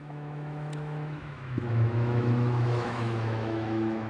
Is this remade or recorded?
remade